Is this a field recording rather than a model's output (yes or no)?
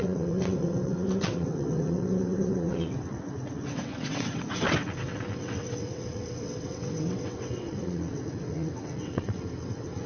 no